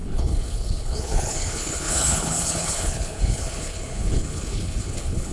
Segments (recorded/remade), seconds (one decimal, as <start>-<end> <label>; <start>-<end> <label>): 0.0-5.3 remade